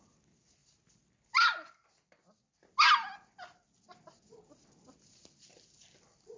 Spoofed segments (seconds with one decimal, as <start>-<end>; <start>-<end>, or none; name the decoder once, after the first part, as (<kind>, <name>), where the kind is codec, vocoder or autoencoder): none